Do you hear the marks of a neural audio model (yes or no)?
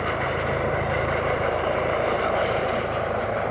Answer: yes